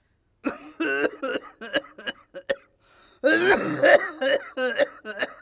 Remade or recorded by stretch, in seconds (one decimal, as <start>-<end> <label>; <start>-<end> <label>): 0.0-5.4 recorded